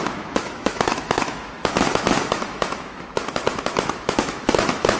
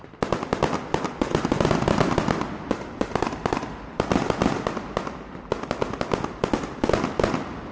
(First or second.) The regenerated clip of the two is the first